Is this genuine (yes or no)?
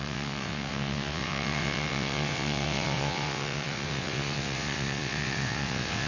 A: no